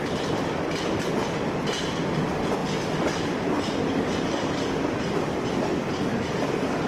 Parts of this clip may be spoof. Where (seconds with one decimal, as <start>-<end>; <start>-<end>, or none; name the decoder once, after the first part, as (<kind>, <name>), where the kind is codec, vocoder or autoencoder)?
none